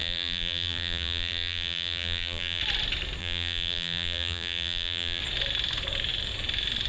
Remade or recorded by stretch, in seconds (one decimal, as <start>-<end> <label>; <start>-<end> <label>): 0.0-2.6 remade; 2.6-3.2 recorded; 3.2-5.2 remade; 5.2-6.9 recorded